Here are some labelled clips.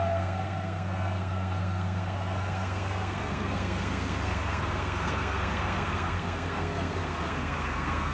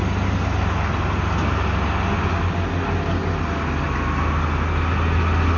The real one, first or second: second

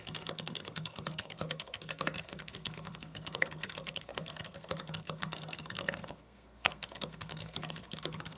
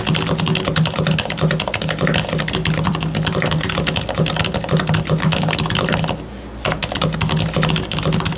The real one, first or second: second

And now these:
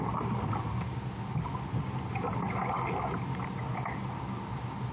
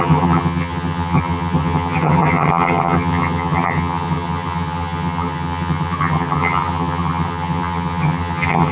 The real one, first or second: first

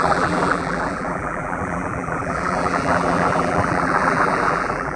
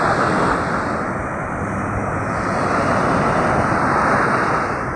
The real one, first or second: second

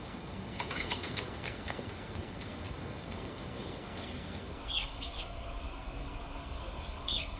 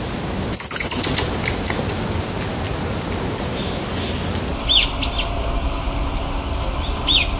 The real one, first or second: second